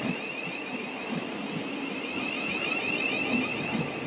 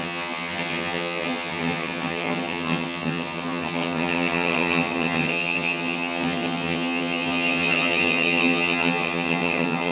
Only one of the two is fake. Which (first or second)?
second